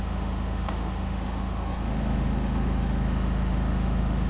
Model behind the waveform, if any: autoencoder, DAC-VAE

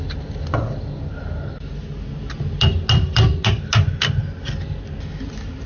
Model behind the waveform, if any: none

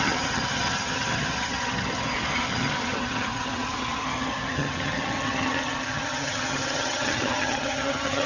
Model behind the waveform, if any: vocoder, HiFi-GAN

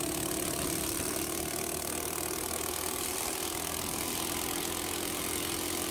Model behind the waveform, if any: none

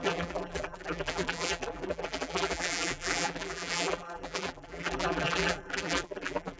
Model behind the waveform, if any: vocoder, BigVGAN v2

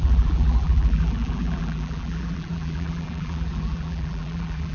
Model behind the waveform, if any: vocoder, BigVGAN v2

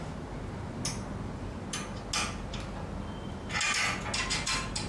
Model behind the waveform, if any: none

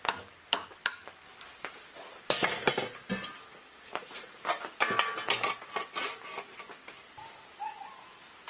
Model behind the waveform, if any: none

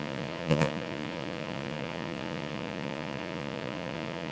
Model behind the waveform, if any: vocoder, Vocos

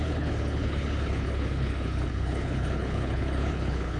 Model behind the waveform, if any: codec, HILCodec